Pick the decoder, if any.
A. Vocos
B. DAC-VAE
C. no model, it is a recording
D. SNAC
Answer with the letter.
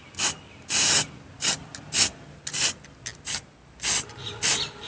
C